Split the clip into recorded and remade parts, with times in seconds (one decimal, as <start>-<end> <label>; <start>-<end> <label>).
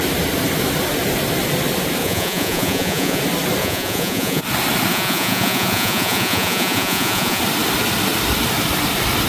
0.0-2.0 recorded; 2.0-3.2 remade; 3.2-3.6 recorded; 3.6-4.4 remade; 4.4-4.9 recorded; 4.9-7.4 remade; 7.4-9.3 recorded